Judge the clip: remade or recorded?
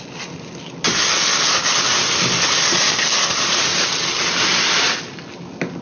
recorded